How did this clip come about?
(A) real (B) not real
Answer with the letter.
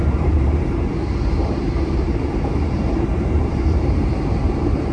B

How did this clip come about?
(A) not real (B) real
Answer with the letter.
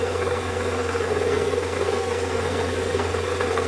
A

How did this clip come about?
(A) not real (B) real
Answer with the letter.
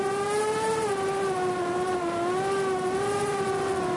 B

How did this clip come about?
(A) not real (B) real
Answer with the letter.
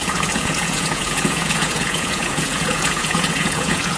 A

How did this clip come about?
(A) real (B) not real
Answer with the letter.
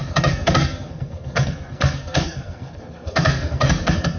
B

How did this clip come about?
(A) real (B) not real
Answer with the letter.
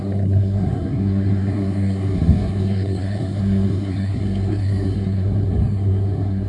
B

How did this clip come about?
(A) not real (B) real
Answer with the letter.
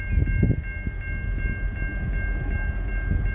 B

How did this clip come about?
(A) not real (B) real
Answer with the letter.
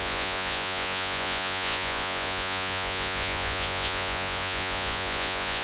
A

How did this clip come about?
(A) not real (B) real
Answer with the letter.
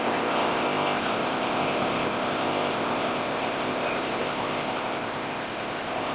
A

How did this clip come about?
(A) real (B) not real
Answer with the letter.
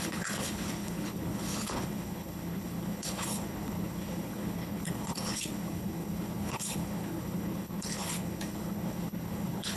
B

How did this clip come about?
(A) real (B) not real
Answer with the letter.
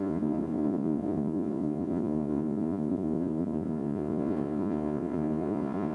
B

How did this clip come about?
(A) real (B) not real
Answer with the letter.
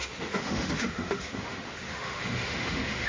B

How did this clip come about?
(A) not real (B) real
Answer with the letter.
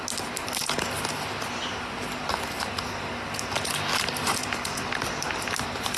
B